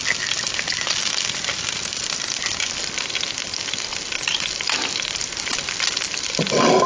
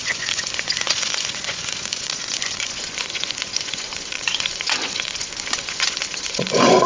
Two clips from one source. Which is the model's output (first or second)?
second